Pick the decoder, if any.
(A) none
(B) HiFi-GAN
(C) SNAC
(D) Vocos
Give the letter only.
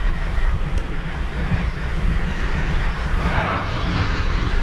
C